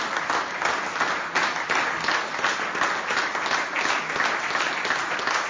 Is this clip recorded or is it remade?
recorded